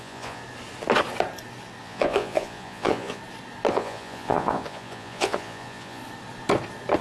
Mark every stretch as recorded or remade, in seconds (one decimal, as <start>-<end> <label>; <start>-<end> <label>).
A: 0.0-0.4 remade; 0.4-1.8 recorded; 1.8-3.2 remade; 3.2-3.7 recorded; 3.7-6.0 remade; 6.0-7.0 recorded